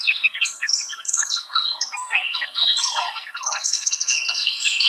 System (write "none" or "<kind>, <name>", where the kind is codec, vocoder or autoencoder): codec, SNAC